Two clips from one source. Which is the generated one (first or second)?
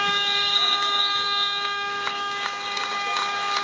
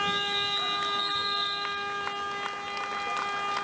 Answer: first